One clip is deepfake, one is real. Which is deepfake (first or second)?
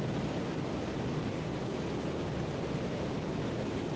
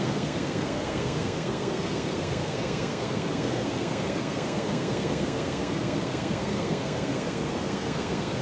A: second